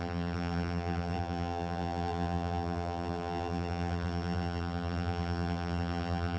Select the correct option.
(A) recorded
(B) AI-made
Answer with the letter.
B